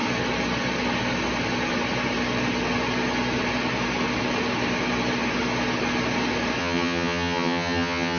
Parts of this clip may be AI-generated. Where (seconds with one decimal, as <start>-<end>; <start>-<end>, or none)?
6.6-8.2